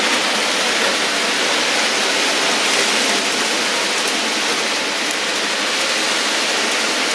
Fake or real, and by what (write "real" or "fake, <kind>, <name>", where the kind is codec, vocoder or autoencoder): real